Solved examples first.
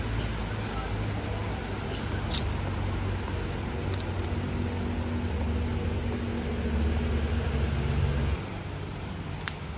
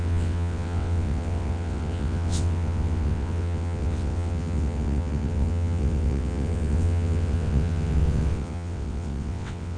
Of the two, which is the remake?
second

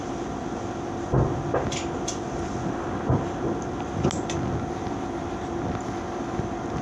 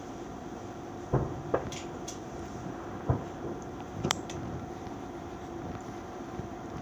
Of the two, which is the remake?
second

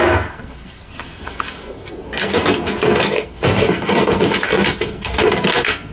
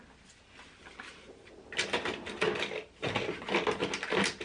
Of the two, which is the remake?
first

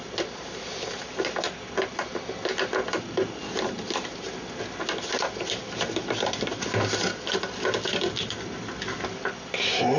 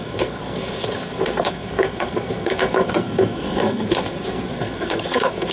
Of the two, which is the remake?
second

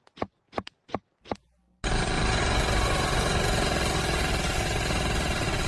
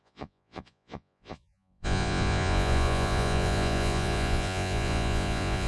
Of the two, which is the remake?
second